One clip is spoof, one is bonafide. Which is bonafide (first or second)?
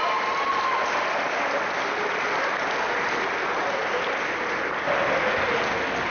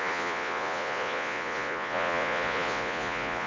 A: first